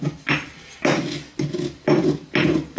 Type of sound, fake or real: real